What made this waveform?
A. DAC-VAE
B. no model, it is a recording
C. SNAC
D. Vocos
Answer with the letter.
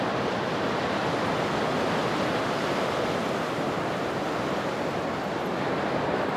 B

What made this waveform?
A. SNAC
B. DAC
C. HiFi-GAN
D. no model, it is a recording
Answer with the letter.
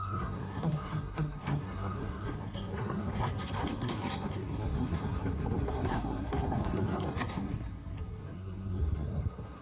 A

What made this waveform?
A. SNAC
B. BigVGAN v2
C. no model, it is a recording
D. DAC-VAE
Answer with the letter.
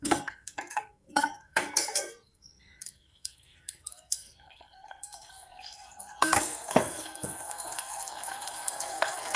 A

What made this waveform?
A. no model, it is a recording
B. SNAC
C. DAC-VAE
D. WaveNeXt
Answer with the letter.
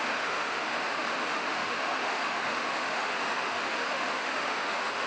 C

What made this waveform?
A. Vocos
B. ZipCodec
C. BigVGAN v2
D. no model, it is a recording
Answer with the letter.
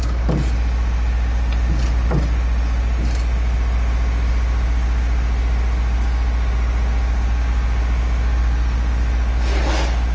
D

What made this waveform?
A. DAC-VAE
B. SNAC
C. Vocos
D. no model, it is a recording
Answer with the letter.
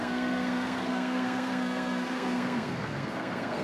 B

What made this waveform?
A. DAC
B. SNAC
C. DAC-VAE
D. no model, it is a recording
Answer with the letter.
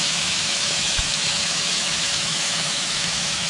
C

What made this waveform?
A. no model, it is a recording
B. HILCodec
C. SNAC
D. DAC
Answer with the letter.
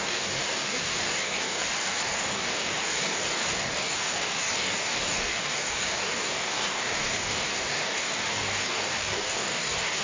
D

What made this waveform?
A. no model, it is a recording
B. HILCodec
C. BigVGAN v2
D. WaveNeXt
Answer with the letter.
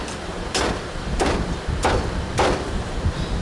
C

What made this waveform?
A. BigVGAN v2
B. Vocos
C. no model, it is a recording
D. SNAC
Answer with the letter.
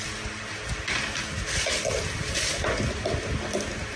C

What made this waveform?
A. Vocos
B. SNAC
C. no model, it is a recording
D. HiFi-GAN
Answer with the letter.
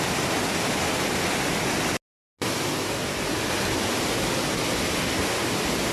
C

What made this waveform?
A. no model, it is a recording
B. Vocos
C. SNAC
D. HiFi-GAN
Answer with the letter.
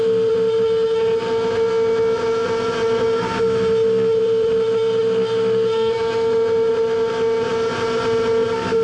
A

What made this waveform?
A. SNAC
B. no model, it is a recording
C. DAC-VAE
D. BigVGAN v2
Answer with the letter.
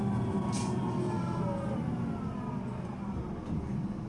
B